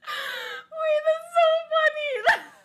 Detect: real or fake real